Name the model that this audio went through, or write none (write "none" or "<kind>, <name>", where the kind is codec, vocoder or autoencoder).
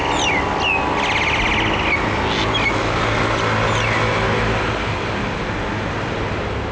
none